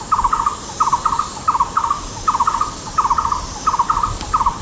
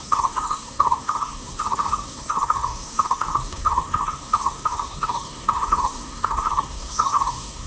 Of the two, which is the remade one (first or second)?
second